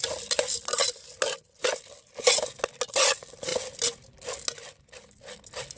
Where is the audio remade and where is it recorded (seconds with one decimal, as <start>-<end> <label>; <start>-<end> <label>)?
0.0-5.8 recorded

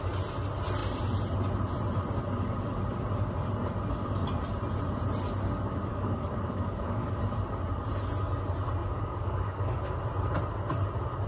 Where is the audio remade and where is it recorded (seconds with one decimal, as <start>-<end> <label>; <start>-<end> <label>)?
0.0-5.9 recorded; 5.9-7.2 remade; 7.2-8.8 recorded; 8.8-10.0 remade; 10.0-11.3 recorded

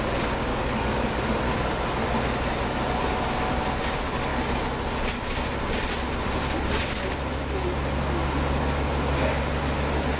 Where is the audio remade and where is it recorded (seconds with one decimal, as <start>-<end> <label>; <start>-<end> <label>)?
0.0-0.5 recorded; 0.5-1.3 remade; 1.3-10.2 recorded

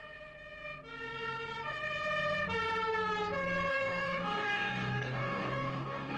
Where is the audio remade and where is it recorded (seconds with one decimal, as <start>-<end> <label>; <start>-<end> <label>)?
0.0-3.7 recorded; 3.7-6.2 remade

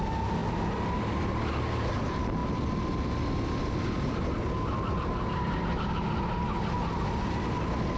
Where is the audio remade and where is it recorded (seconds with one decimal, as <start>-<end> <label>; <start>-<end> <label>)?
0.0-8.0 recorded

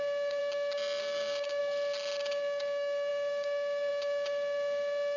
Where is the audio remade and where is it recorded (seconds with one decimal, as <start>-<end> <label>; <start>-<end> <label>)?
0.0-0.4 remade; 0.4-1.0 recorded; 1.0-1.6 remade; 1.6-2.2 recorded; 2.2-5.2 remade